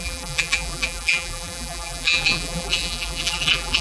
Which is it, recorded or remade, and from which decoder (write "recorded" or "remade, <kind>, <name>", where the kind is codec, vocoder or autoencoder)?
remade, vocoder, BigVGAN v2